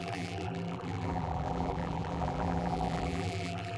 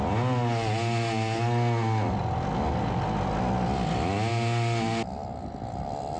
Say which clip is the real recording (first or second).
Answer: second